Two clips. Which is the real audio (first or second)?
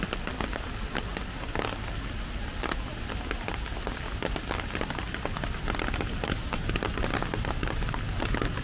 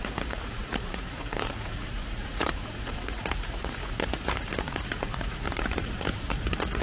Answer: first